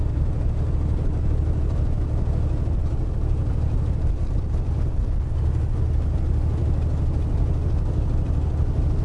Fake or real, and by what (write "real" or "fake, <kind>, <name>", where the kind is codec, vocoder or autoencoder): real